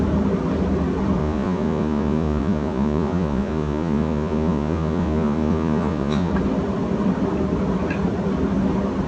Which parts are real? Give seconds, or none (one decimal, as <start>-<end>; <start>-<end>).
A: 0.0-1.2; 6.3-9.1